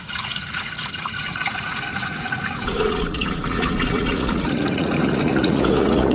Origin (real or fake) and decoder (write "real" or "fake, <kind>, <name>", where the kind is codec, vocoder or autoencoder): fake, vocoder, Vocos